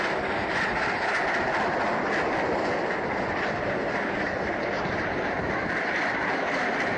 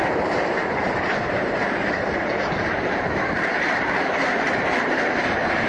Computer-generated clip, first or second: second